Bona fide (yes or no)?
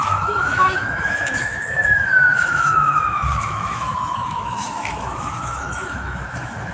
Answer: no